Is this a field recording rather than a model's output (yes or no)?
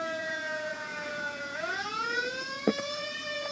no